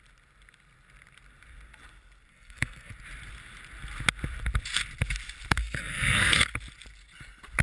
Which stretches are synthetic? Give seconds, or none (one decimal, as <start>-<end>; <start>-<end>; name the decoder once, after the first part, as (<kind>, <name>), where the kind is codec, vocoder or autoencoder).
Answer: 2.3-2.9 (codec, SNAC); 5.5-6.5